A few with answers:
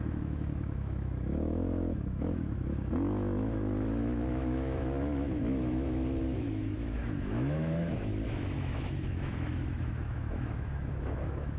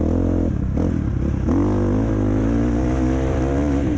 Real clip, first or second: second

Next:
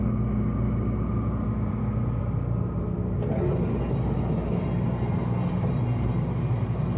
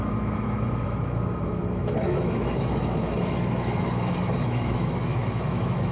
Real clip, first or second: first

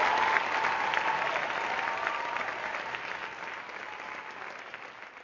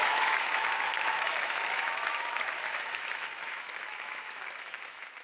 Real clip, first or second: first